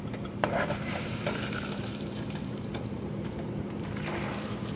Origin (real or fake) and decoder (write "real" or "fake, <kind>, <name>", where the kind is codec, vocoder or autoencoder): fake, vocoder, BigVGAN v2